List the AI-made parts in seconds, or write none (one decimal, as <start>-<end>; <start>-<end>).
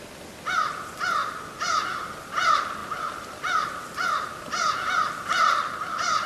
none